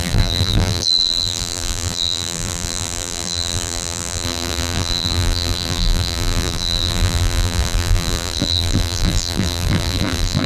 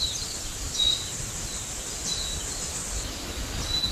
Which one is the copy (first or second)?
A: first